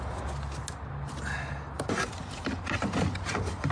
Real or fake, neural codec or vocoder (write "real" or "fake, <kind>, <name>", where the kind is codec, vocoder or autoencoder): real